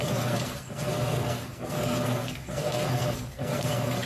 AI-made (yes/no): yes